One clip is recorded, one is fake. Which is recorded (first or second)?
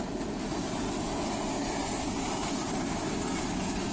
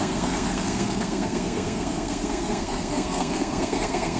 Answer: first